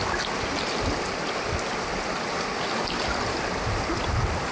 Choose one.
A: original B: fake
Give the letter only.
A